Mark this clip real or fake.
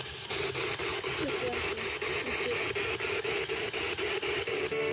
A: real